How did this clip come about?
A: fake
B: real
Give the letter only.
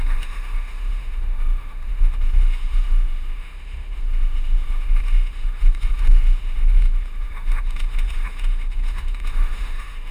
A